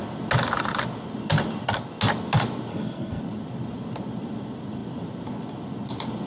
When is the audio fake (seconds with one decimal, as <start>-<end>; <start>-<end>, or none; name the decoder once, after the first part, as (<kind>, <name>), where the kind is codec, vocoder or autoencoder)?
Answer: 2.7-3.2 (codec, SNAC)